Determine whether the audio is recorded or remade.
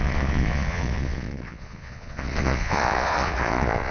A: remade